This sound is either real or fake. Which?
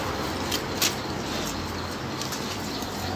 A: real